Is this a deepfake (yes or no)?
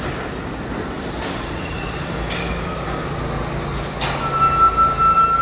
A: no